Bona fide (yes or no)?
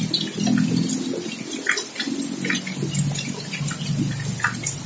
yes